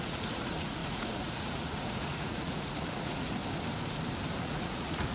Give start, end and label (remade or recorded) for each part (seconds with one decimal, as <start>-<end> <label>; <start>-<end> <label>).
0.0-3.4 remade; 3.4-4.4 recorded; 4.4-5.1 remade